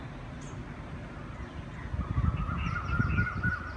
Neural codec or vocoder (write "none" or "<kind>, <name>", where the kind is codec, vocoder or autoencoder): none